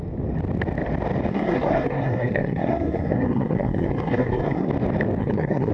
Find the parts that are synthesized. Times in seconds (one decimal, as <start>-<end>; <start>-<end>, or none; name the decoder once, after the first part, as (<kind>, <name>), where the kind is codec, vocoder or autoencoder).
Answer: 1.3-4.7 (codec, SNAC); 5.2-5.7